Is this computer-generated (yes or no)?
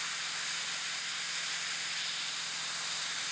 no